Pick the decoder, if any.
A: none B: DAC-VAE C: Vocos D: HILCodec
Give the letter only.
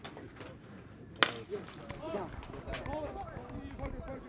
A